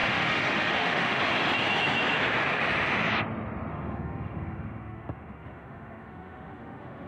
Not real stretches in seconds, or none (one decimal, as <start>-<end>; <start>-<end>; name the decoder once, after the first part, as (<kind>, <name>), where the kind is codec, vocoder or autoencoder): 0.0-1.2 (autoencoder, DAC-VAE); 3.7-7.1

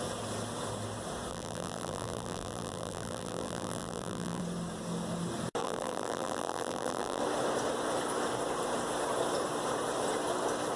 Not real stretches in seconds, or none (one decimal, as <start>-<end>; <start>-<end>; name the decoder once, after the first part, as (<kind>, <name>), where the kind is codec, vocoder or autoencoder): 1.3-4.4 (vocoder, BigVGAN v2); 5.6-7.2